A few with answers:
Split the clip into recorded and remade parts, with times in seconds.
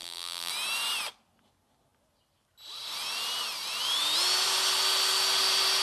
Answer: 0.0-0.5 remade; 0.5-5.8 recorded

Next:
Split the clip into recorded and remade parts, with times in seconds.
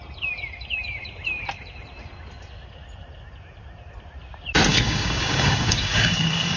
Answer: 0.0-4.7 recorded; 4.7-6.6 remade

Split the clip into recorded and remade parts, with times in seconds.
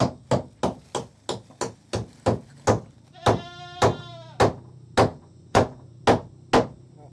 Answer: 0.0-5.1 recorded; 5.1-6.0 remade; 6.0-7.1 recorded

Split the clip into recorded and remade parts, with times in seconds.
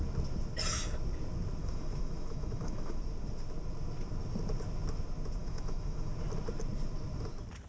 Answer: 0.0-1.6 recorded; 1.6-3.0 remade; 3.0-5.4 recorded; 5.4-6.1 remade; 6.1-7.7 recorded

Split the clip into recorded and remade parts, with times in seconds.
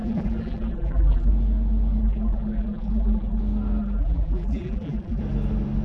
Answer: 0.0-1.3 remade; 1.3-2.0 recorded; 2.0-3.4 remade; 3.4-3.8 recorded; 3.8-5.2 remade; 5.2-5.8 recorded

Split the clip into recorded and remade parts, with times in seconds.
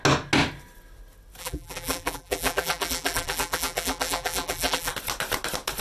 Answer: 0.0-1.4 recorded; 1.4-4.9 remade; 4.9-5.8 recorded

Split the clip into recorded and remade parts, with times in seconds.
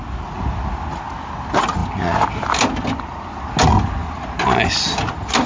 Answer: 0.0-5.5 recorded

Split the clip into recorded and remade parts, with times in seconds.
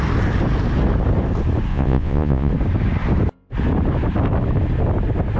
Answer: 0.0-1.7 recorded; 1.7-2.5 remade; 2.5-5.4 recorded